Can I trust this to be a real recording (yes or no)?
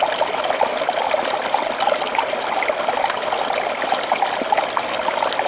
yes